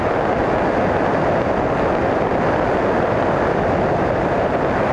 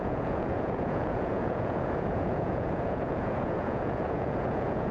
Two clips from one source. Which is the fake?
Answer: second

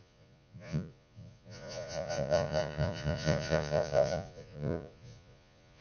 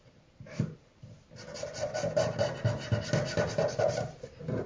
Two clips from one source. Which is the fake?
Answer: first